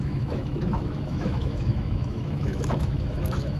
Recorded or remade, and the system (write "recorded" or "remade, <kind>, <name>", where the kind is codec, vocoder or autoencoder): remade, autoencoder, DAC-VAE